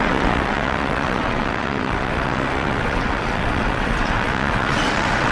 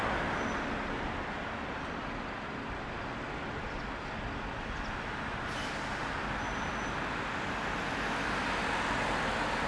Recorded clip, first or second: second